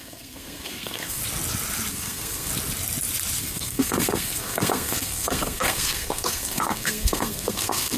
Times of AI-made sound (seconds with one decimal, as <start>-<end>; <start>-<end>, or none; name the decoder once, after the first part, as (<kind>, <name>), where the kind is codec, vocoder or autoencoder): 0.0-1.2 (codec, SNAC); 1.9-2.5; 3.4-8.0